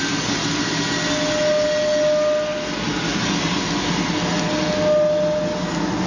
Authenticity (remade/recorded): recorded